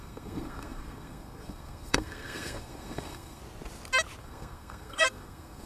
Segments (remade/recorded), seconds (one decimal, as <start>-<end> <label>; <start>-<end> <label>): 0.0-3.4 remade; 3.4-4.2 recorded; 4.2-5.7 remade